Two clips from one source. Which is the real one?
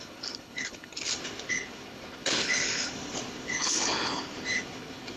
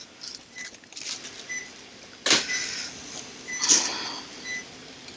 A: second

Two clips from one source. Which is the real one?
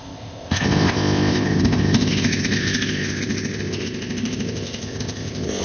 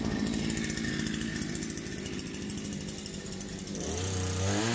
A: second